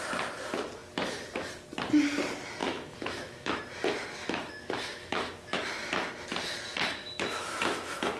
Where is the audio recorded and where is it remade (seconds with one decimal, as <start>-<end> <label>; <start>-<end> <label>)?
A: 0.0-2.6 recorded; 2.6-3.6 remade; 3.6-4.2 recorded; 4.2-5.6 remade; 5.6-7.0 recorded; 7.0-8.2 remade